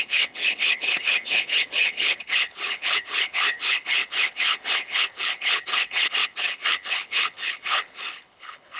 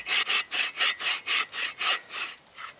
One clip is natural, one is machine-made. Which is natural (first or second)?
second